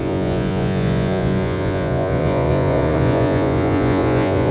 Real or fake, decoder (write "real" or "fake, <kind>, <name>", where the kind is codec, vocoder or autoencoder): fake, vocoder, Vocos